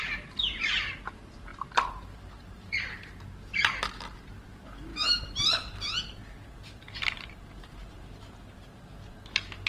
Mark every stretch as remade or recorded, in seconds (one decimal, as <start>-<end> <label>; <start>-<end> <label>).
0.0-1.5 recorded; 1.5-3.1 remade; 3.1-9.7 recorded